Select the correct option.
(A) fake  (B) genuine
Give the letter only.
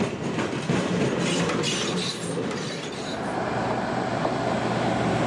B